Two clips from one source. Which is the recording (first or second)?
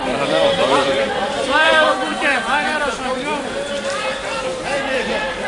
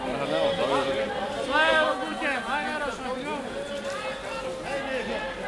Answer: second